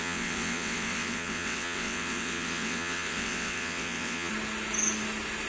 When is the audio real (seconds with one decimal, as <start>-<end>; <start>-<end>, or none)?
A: 4.3-5.5